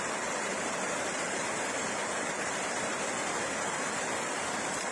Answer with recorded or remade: remade